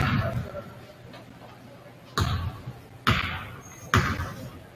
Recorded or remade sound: recorded